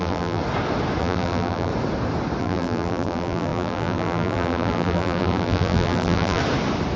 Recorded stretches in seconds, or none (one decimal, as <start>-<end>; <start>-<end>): 0.4-1.0; 1.7-2.4; 6.4-7.0